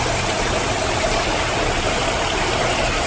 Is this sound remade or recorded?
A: recorded